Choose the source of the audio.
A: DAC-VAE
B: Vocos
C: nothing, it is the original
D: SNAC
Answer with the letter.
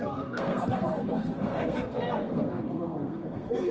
D